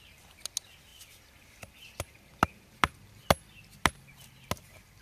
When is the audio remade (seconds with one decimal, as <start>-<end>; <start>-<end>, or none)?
none